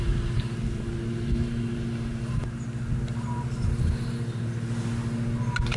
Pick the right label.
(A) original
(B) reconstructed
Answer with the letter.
A